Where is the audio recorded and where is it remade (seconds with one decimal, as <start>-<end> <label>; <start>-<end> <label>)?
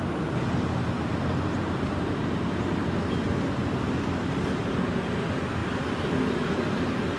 0.0-1.3 recorded; 1.3-2.7 remade; 2.7-7.2 recorded